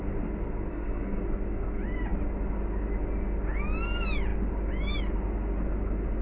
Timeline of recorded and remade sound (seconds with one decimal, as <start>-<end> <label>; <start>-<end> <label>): 0.0-0.7 recorded; 0.7-1.2 remade; 1.2-6.2 recorded